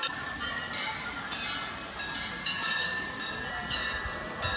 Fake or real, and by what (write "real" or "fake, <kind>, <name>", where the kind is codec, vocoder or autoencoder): fake, vocoder, BigVGAN v2